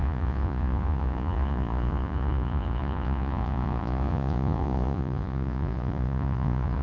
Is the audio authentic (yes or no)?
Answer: no